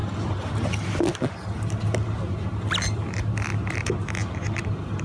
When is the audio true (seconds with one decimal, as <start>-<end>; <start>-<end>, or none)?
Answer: 0.0-5.0